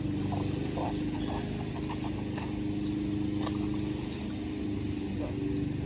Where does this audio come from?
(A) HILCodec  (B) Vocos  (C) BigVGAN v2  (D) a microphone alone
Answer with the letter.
D